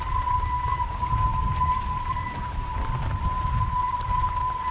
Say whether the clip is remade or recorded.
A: recorded